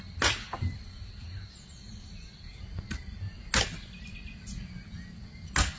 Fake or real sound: real